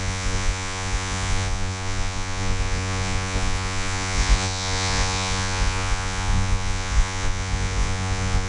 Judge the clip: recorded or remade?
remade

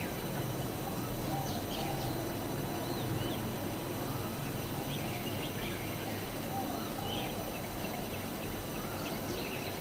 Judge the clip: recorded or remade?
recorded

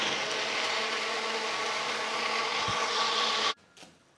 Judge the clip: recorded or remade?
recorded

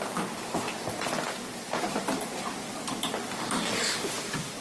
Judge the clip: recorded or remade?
remade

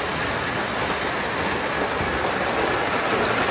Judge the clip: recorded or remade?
recorded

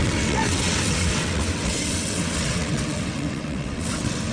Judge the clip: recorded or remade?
remade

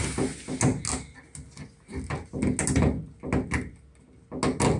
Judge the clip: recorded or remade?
recorded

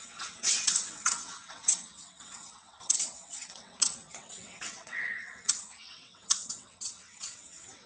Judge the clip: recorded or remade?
remade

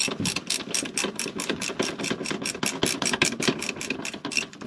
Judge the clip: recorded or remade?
recorded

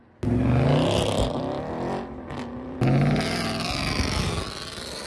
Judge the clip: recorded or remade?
recorded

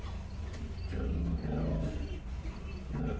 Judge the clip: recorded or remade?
recorded